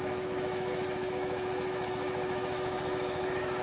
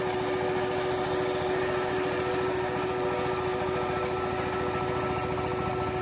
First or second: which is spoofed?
first